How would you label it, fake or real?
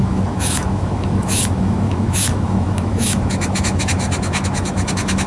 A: fake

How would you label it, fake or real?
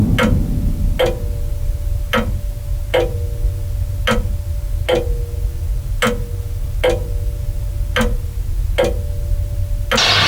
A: real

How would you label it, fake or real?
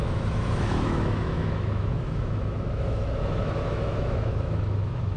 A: fake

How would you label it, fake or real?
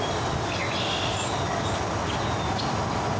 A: real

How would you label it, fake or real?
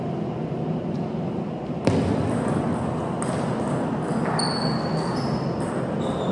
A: real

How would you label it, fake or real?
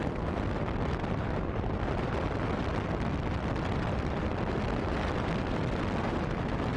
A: real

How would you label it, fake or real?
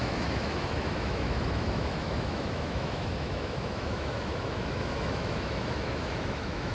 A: fake